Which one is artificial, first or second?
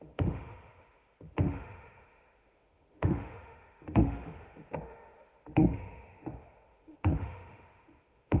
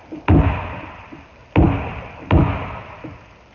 first